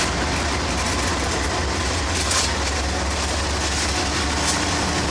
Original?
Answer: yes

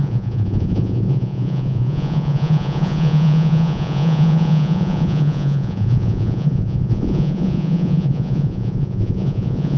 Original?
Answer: no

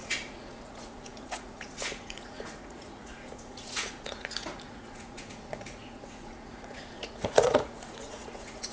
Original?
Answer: no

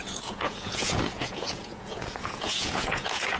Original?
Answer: no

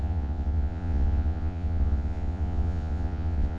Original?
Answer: no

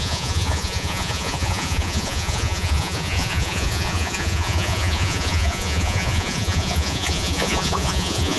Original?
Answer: no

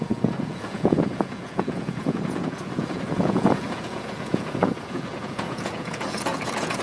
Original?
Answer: no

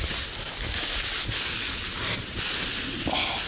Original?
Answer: yes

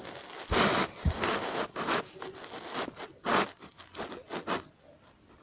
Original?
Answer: yes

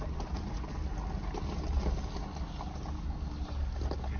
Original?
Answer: yes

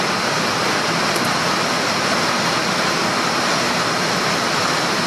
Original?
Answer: yes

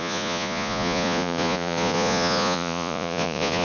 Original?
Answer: no